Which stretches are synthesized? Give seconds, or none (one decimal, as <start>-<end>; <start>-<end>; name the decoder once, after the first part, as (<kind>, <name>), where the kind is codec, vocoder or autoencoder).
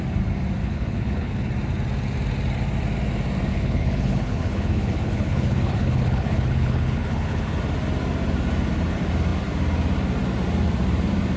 0.6-1.5 (codec, HILCodec); 3.5-7.6